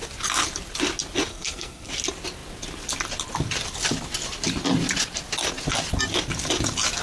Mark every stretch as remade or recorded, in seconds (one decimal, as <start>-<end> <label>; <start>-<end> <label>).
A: 0.0-1.3 recorded; 1.3-1.9 remade; 1.9-7.0 recorded